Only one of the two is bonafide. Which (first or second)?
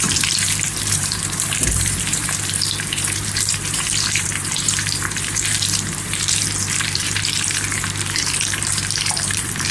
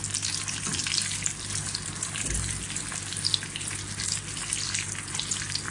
second